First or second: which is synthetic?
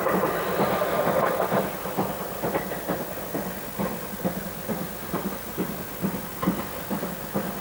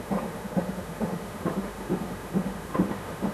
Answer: second